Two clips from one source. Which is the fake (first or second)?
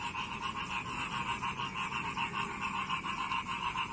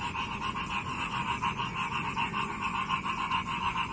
second